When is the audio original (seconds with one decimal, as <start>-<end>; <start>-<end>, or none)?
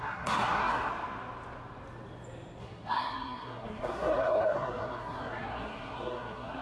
0.9-2.6